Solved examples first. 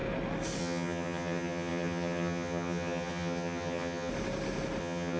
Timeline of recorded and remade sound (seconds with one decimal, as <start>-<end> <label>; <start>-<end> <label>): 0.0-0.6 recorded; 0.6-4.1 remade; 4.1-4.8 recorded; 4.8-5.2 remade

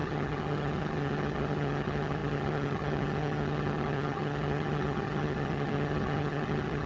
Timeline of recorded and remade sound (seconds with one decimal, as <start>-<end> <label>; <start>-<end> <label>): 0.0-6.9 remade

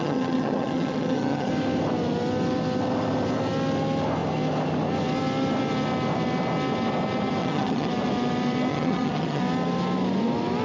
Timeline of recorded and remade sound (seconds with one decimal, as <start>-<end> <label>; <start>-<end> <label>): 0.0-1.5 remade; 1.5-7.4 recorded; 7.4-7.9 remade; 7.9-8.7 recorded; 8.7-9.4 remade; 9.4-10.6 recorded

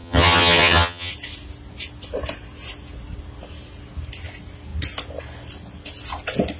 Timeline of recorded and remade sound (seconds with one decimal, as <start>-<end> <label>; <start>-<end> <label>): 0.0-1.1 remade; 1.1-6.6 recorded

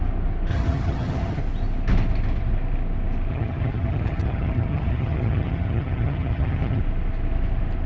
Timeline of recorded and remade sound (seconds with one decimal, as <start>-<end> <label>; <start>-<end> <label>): 0.0-0.5 recorded; 0.5-1.4 remade; 1.4-3.3 recorded; 3.3-6.8 remade; 6.8-7.9 recorded

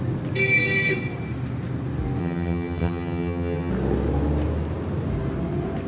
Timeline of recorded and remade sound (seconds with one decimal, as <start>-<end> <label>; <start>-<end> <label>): 0.0-2.2 recorded; 2.2-3.7 remade; 3.7-5.9 recorded

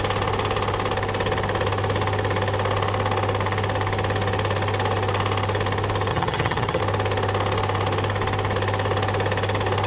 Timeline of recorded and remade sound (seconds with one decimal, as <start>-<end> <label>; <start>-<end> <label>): 0.0-6.1 recorded; 6.1-6.8 remade; 6.8-9.9 recorded

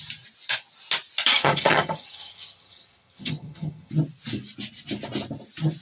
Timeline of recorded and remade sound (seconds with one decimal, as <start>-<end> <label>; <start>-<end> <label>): 0.0-1.3 recorded; 1.3-3.9 remade; 3.9-5.8 recorded